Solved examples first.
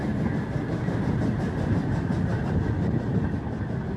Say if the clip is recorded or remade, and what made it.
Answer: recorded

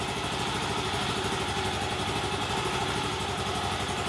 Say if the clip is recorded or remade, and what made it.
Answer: recorded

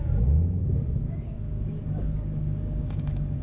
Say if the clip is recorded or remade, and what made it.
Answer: remade, codec, DAC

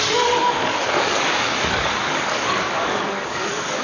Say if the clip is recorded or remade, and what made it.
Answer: remade, codec, DAC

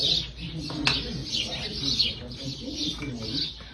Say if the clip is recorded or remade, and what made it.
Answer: recorded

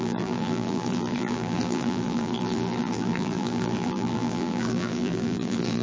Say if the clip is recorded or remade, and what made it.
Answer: remade, vocoder, BigVGAN v2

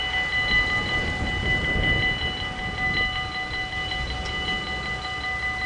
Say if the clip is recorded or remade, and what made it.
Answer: recorded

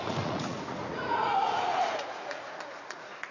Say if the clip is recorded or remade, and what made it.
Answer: remade, vocoder, Vocos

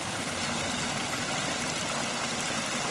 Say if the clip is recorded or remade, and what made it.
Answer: recorded